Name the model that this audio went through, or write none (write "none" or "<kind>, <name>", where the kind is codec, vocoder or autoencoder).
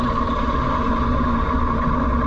none